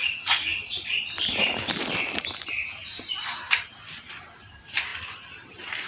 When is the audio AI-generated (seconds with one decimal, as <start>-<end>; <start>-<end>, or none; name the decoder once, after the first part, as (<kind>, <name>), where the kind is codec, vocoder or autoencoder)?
0.5-2.2 (vocoder, BigVGAN v2); 4.9-5.9